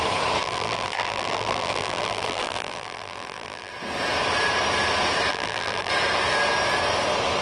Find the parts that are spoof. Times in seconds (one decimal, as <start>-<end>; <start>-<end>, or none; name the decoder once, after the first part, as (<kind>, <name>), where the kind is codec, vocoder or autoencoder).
0.4-3.7 (vocoder, BigVGAN v2); 5.3-5.9